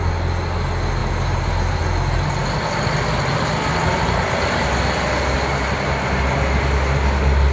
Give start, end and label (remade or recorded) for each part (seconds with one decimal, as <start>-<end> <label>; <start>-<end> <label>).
0.0-7.5 recorded